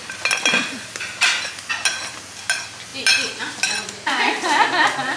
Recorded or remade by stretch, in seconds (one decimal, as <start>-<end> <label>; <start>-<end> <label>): 0.0-5.2 recorded